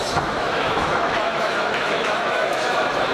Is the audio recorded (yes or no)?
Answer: no